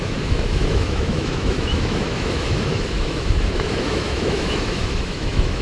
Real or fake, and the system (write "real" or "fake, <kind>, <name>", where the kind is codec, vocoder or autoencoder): fake, autoencoder, DAC-VAE